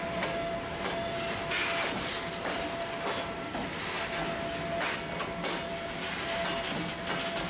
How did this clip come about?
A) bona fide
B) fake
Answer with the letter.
A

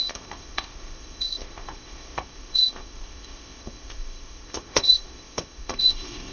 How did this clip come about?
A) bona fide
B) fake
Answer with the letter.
B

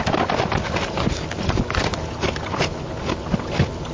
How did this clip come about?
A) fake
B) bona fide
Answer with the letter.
B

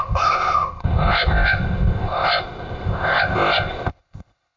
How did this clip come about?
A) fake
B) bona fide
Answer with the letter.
A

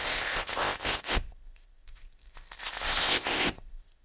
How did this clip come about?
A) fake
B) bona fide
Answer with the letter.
A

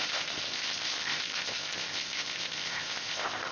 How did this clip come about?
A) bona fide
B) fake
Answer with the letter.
B